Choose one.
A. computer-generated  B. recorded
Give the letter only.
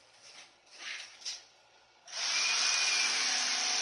B